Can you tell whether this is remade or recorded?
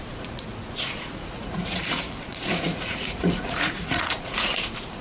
remade